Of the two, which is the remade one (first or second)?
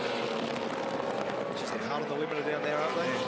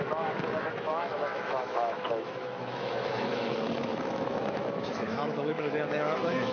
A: second